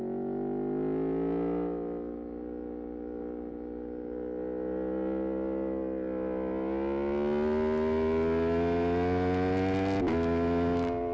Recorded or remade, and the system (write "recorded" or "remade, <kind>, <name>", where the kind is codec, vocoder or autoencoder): recorded